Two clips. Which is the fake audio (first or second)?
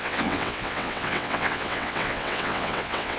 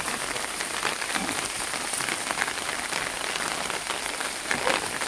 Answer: first